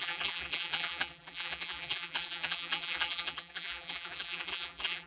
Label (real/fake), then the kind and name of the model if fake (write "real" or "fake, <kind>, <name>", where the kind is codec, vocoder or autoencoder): fake, vocoder, BigVGAN v2